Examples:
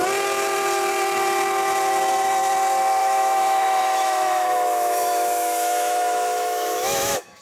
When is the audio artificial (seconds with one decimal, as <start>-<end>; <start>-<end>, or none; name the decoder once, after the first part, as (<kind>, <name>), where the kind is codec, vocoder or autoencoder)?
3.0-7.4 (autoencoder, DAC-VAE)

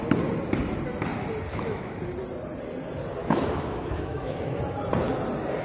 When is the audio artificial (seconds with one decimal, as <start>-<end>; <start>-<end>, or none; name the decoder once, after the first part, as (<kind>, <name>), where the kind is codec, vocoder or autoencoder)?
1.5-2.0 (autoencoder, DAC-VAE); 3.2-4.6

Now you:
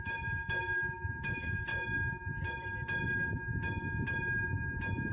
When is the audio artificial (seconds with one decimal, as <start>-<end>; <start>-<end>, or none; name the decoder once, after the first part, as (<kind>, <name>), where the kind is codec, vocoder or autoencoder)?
0.0-1.7 (autoencoder, DAC-VAE)

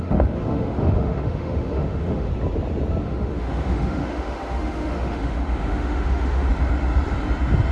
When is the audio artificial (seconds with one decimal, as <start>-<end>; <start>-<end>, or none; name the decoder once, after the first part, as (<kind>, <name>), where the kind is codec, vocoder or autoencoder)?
0.0-2.3 (autoencoder, DAC-VAE); 3.0-6.5

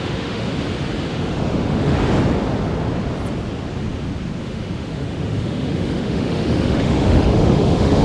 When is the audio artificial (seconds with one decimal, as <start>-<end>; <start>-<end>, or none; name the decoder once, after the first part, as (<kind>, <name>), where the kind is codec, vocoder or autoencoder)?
0.0-0.5 (autoencoder, DAC-VAE); 1.1-2.0; 4.4-8.0

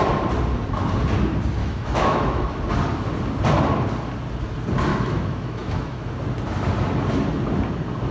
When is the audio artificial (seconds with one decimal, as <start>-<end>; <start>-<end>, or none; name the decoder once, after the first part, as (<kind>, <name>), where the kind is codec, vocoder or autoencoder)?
1.6-2.6 (autoencoder, DAC-VAE); 4.9-6.1

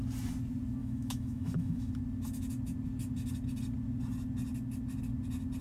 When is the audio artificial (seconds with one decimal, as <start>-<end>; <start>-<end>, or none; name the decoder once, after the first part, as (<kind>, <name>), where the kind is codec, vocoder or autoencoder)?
0.8-1.9 (autoencoder, DAC-VAE)